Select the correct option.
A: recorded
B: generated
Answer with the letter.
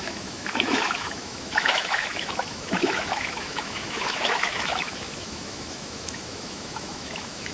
B